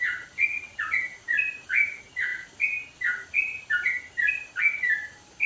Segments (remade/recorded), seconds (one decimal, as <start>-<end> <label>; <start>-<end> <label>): 0.0-5.5 recorded